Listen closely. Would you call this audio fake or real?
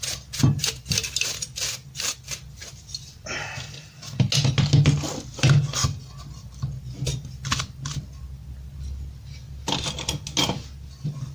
real